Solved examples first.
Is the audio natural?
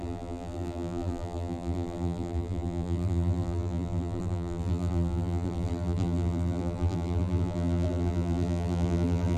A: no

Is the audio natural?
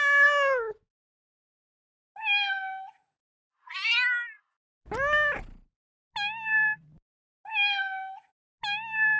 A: yes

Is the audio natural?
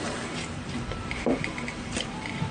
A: no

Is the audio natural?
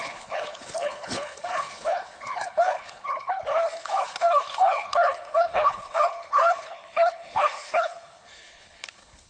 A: no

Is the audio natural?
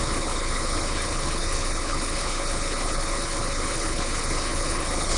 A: no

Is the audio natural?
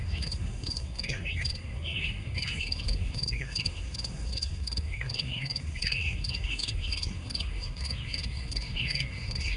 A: no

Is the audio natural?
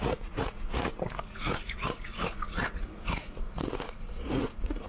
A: no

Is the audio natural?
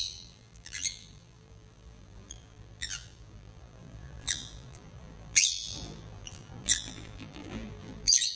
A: no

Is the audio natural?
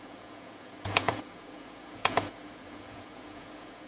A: no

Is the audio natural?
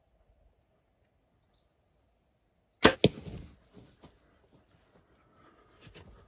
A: yes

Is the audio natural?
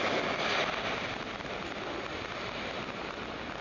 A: yes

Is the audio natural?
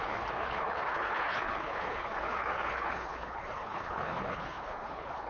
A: no